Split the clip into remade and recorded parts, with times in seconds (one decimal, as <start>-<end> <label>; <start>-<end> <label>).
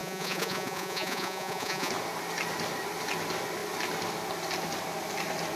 0.0-1.9 remade; 1.9-5.6 recorded